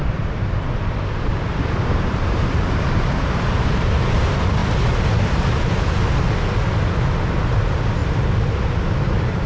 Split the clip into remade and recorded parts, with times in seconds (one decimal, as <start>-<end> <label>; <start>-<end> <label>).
0.0-4.6 remade; 4.6-7.4 recorded; 7.4-8.0 remade; 8.0-8.5 recorded; 8.5-9.5 remade